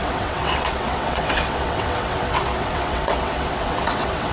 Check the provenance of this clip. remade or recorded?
remade